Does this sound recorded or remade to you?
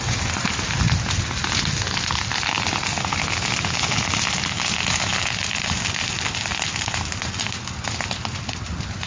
recorded